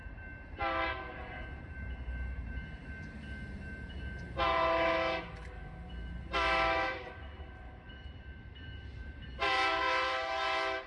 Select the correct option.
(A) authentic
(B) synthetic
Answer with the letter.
B